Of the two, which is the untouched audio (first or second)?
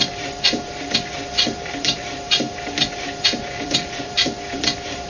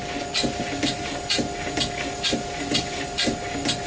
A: second